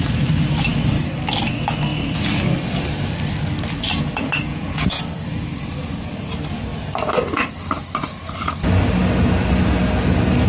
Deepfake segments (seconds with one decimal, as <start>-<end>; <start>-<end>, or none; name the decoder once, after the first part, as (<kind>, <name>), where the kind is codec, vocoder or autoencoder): 4.5-5.0 (vocoder, Vocos)

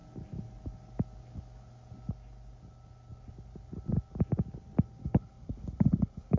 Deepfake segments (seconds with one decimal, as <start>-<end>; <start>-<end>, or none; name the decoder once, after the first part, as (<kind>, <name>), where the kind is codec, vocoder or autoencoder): 5.0-6.4 (codec, HILCodec)

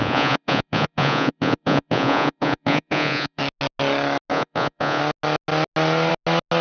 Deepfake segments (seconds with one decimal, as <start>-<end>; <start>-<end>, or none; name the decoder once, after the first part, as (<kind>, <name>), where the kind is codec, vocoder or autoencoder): 0.0-3.4 (vocoder, Vocos); 4.3-5.0